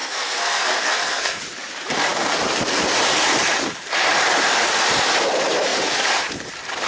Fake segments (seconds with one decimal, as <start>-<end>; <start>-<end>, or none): 0.0-1.4